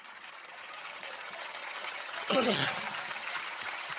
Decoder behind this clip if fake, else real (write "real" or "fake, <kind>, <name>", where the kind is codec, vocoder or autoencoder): fake, vocoder, HiFi-GAN